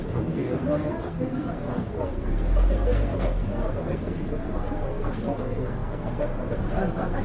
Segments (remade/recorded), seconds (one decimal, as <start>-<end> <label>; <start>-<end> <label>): 0.0-7.2 remade